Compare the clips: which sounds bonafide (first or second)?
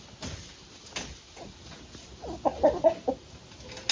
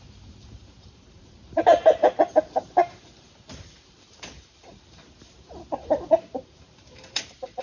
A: first